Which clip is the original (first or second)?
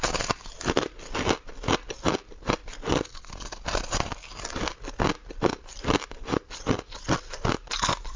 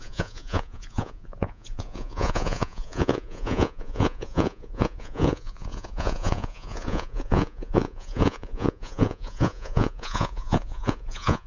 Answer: first